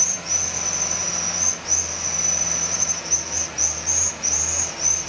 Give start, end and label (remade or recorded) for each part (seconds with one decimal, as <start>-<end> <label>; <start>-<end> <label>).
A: 0.0-5.1 recorded